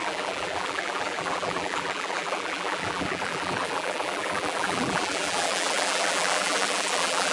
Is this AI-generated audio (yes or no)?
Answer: yes